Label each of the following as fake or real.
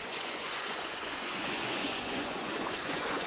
fake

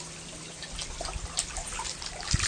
real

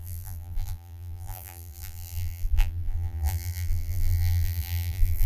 fake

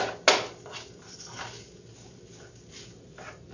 real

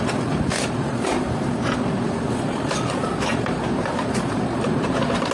fake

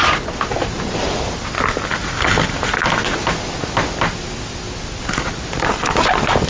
real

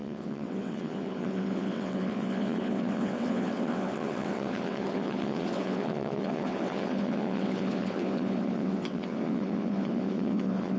fake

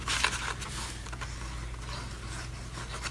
real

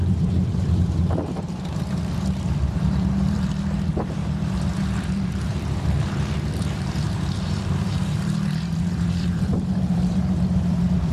fake